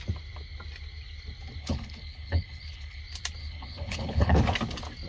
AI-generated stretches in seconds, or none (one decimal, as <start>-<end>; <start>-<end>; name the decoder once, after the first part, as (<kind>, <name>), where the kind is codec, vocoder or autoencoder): 1.6-3.0 (codec, HILCodec); 3.4-4.4